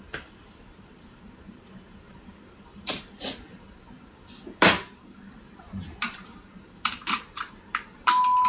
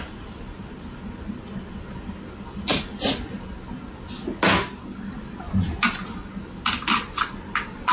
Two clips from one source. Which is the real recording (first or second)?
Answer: second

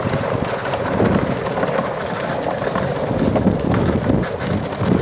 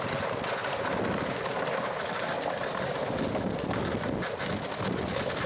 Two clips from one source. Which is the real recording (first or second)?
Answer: second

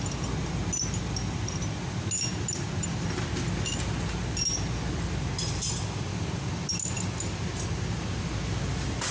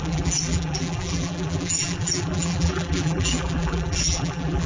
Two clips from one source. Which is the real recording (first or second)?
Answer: first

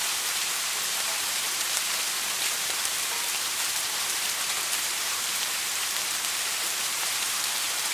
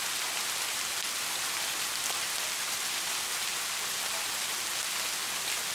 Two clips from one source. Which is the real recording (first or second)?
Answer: second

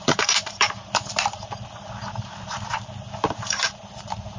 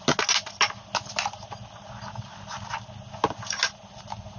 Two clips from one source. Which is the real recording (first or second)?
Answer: second